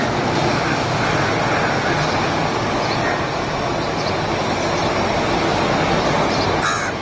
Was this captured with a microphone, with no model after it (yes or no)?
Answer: yes